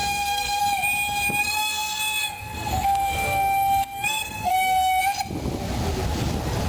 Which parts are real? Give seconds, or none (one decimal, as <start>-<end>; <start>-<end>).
0.6-1.4; 5.0-6.7

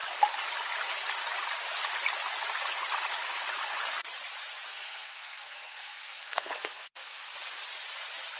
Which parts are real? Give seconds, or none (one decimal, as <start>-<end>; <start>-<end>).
0.0-4.7; 7.3-8.4

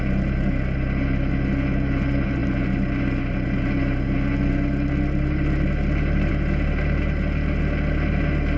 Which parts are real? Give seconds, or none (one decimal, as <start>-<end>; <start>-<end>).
0.0-8.6

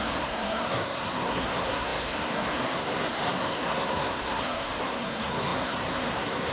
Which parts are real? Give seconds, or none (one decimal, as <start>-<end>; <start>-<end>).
none

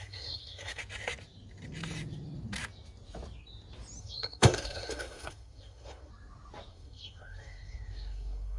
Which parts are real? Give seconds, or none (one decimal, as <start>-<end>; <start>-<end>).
0.8-4.0; 6.1-6.7